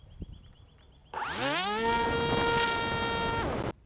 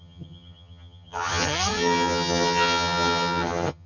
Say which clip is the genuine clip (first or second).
first